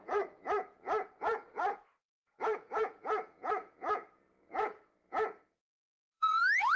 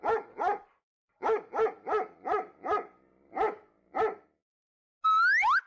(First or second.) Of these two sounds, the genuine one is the second